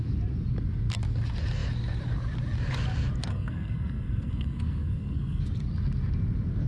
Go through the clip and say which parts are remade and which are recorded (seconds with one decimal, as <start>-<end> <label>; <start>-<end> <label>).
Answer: 0.0-3.3 recorded; 3.3-5.4 remade; 5.4-6.7 recorded